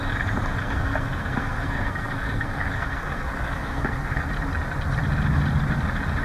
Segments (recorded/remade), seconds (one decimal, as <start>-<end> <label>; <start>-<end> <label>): 0.0-0.6 recorded; 0.6-4.3 remade; 4.3-6.2 recorded